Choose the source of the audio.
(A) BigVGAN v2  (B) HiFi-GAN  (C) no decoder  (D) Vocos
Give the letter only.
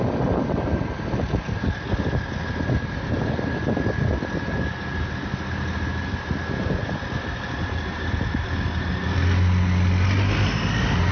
C